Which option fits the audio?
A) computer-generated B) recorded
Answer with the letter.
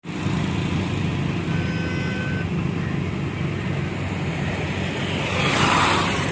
B